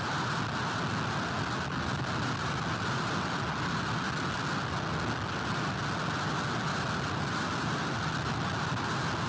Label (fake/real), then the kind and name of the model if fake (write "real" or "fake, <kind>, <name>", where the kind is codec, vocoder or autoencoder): real